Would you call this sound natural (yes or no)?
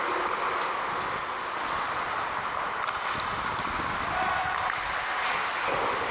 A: yes